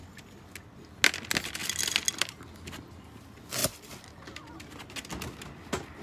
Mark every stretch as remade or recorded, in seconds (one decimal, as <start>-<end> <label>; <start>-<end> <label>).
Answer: 0.0-6.0 recorded